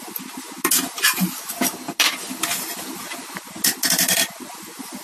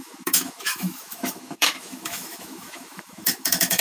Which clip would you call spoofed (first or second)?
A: second